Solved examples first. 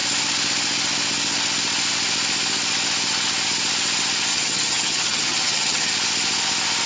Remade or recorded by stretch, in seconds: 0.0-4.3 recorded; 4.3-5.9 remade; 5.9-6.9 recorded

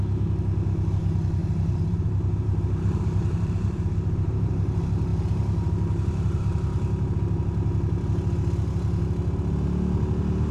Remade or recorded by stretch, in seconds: 0.0-1.4 recorded; 1.4-4.5 remade; 4.5-10.5 recorded

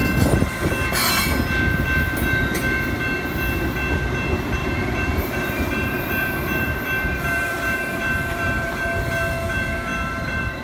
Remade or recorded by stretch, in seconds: 0.0-4.6 recorded; 4.6-8.8 remade; 8.8-9.9 recorded; 9.9-10.6 remade

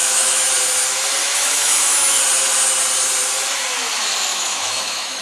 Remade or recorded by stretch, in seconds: 0.0-0.5 remade; 0.5-1.2 recorded; 1.2-2.2 remade; 2.2-4.3 recorded; 4.3-5.2 remade

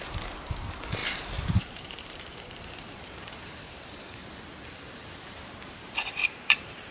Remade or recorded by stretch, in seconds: 0.0-4.2 remade; 4.2-5.0 recorded; 5.0-6.9 remade